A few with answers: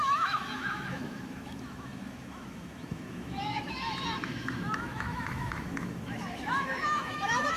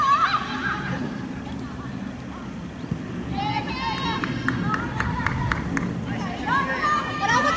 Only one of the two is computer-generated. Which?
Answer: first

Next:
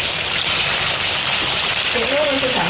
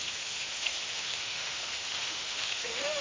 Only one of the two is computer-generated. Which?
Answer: second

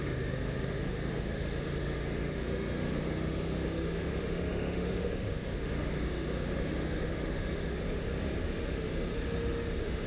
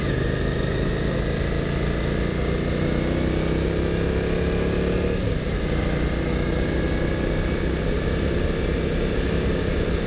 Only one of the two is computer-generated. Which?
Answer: first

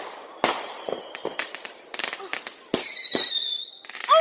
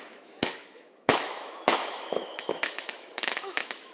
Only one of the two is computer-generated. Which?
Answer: second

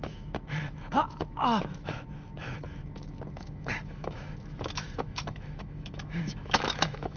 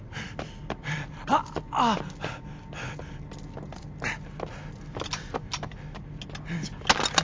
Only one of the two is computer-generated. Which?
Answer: first